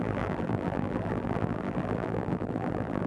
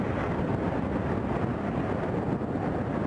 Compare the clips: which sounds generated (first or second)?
first